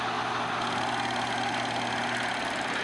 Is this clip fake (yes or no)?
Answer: no